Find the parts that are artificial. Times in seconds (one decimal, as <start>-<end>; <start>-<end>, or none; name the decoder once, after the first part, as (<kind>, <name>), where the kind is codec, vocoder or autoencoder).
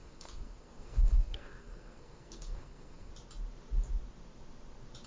0.0-3.1 (codec, SNAC)